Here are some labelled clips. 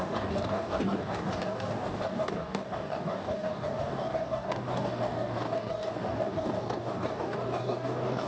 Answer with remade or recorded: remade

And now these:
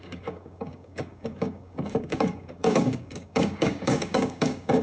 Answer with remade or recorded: remade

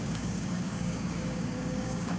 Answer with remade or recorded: remade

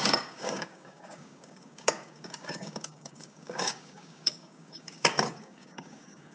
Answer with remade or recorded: remade